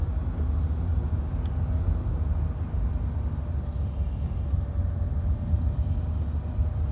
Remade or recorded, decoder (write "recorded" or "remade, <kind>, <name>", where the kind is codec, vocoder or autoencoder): recorded